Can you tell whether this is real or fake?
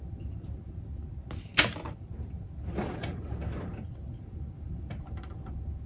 real